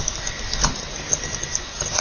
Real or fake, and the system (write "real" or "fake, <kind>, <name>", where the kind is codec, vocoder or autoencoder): real